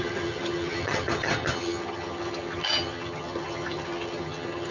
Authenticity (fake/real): fake